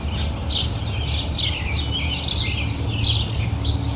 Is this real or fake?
real